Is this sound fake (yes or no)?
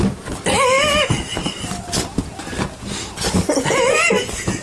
no